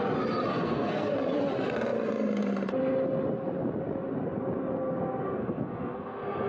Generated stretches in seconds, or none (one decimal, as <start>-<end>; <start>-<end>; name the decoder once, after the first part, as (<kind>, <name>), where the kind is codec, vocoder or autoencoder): 0.5-1.1 (codec, SNAC); 5.4-6.5